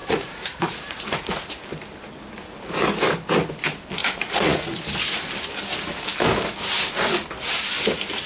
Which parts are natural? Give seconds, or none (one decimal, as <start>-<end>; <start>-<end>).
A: 1.5-4.0; 4.8-8.3